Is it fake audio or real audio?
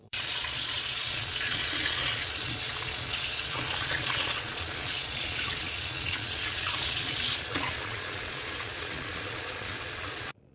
fake